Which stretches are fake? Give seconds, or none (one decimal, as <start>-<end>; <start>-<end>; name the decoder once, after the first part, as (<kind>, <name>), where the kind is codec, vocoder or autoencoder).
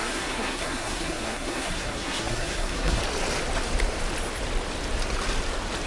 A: 0.0-3.0 (codec, SNAC)